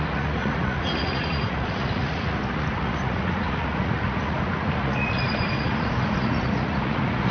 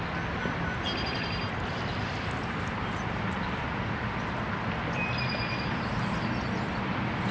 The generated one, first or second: first